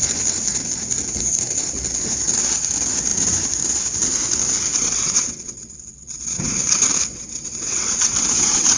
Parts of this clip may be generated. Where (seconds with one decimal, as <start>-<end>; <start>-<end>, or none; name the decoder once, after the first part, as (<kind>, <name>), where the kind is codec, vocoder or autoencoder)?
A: 4.7-6.5 (vocoder, WaveNeXt); 7.1-8.8